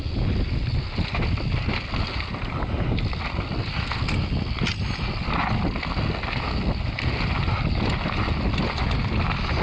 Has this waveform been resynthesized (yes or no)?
no